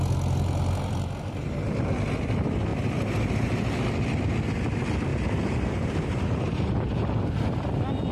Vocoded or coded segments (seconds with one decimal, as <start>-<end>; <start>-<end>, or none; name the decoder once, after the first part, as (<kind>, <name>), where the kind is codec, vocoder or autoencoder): 5.1-7.3 (vocoder, BigVGAN v2)